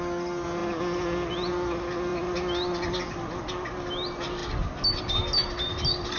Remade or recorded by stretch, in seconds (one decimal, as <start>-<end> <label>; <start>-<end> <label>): 0.0-6.2 recorded